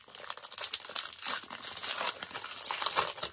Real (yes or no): yes